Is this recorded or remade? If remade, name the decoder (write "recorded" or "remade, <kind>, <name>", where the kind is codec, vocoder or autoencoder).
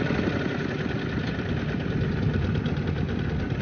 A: recorded